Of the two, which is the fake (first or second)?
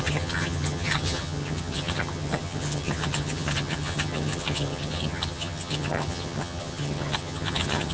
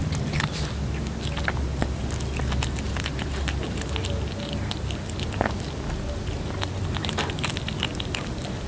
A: first